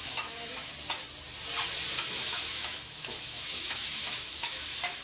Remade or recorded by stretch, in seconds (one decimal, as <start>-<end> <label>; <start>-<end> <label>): 0.0-0.7 remade; 0.7-1.9 recorded; 1.9-5.0 remade